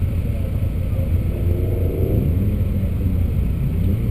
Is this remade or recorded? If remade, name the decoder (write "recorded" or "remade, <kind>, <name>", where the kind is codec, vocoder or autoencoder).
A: recorded